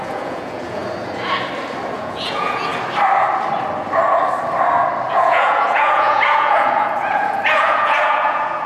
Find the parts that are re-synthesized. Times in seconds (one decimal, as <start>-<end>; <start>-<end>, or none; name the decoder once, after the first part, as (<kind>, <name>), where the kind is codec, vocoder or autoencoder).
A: 0.0-0.8 (vocoder, Vocos); 1.9-2.7; 5.1-8.7